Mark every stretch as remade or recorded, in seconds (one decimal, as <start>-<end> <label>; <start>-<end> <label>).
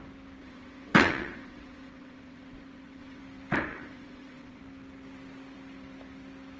0.0-0.4 recorded; 0.4-3.2 remade; 3.2-3.7 recorded; 3.7-4.6 remade; 4.6-6.6 recorded